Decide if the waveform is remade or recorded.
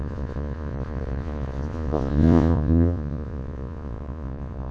remade